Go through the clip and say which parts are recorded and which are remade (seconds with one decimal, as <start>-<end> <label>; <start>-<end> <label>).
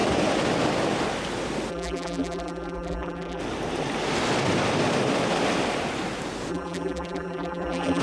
0.0-1.7 recorded; 1.7-3.4 remade; 3.4-6.5 recorded; 6.5-8.0 remade